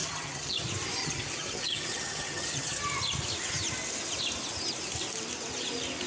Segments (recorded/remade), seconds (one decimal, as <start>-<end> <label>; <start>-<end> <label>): 0.0-0.6 remade; 0.6-1.0 recorded; 1.0-2.8 remade; 2.8-6.1 recorded